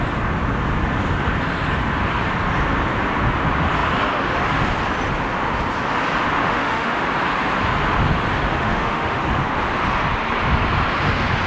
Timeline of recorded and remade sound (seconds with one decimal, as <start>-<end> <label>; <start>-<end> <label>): 0.0-6.4 recorded; 6.4-7.0 remade; 7.0-8.6 recorded; 8.6-9.2 remade; 9.2-11.5 recorded